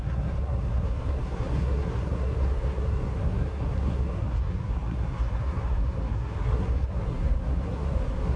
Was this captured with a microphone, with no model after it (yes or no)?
no